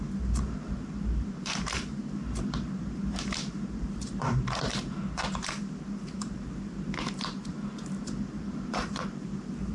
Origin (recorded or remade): remade